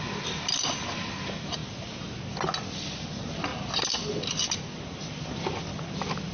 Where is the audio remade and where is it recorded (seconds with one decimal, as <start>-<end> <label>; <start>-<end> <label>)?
0.0-6.3 recorded